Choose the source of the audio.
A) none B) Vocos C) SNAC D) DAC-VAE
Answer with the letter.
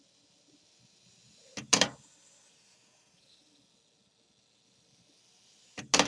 A